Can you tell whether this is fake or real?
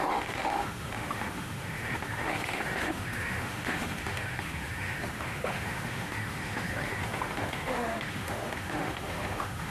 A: fake